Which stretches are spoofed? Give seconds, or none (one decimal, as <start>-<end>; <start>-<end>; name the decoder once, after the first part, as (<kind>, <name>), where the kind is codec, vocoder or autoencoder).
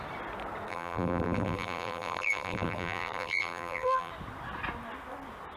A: 0.7-4.1 (vocoder, BigVGAN v2)